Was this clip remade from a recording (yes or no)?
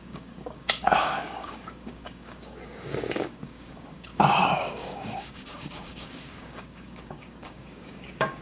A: yes